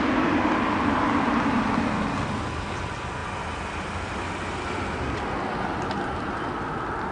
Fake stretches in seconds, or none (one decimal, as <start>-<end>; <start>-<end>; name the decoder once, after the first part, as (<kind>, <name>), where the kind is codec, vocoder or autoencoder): none